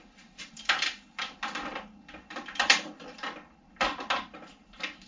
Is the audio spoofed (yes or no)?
no